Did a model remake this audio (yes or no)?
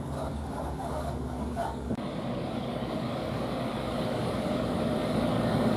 yes